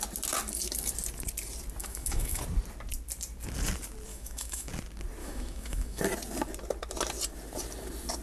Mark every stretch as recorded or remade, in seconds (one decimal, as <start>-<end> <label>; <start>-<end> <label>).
0.0-1.8 recorded; 1.8-2.4 remade; 2.4-4.1 recorded; 4.1-4.7 remade; 4.7-5.2 recorded; 5.2-6.0 remade; 6.0-8.2 recorded